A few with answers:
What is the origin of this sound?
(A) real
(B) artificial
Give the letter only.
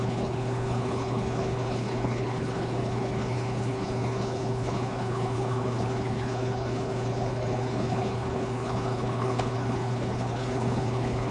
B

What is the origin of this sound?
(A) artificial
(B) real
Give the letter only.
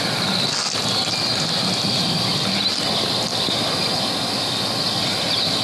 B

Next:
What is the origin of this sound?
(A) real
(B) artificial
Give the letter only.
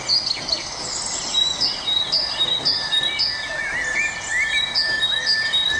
A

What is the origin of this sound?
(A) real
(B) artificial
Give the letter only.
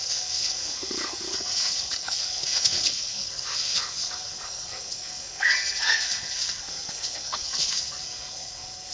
B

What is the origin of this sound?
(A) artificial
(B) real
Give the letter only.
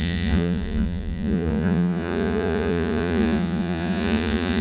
A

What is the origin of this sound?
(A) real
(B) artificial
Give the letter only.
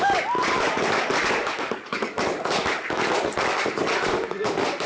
B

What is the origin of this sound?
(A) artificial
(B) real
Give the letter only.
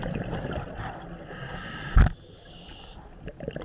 B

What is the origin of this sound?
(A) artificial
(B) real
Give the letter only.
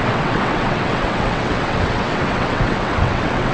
A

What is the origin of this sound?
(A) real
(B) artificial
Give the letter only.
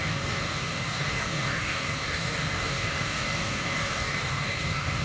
B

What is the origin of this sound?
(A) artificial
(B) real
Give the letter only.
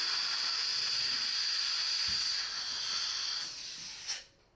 B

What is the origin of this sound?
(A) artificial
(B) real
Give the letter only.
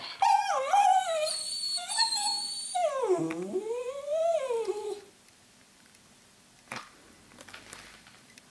A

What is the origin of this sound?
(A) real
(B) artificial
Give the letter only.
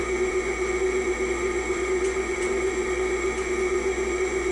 B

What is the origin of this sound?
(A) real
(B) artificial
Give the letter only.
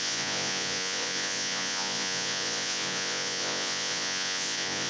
B